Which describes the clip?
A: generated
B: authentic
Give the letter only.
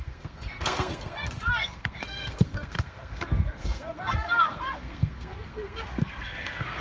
A